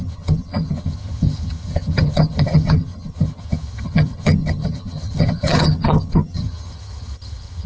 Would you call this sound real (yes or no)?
no